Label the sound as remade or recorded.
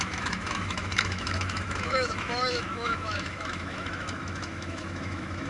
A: remade